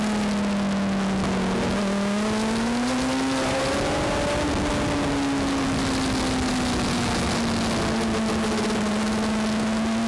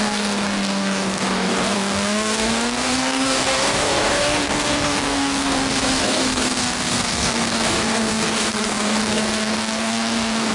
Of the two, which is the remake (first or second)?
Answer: second